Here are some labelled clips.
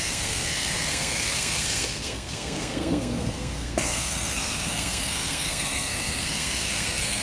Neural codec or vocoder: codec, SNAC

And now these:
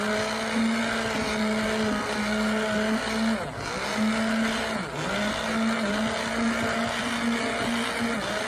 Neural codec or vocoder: none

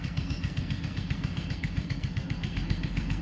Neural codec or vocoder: codec, SNAC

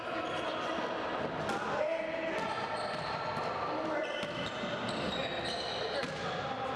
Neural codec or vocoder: none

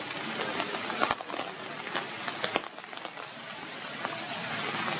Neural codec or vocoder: none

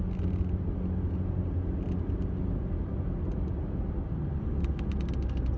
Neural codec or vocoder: none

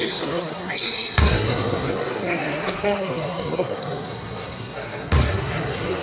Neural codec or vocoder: codec, SNAC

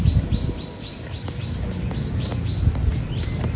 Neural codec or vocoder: none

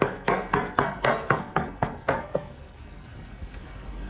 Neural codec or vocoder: codec, SNAC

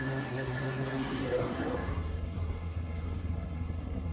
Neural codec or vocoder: codec, SNAC